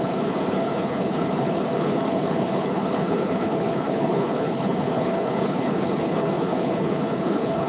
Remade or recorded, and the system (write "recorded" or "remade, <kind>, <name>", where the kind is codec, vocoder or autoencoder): remade, codec, HILCodec